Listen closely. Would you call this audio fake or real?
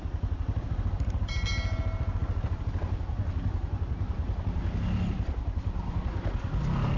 real